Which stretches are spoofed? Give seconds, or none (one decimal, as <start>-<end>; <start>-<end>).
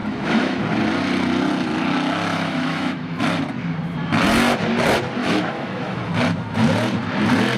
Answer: 0.0-0.6; 2.3-3.2; 5.2-6.0